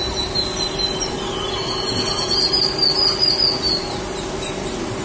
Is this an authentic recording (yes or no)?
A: yes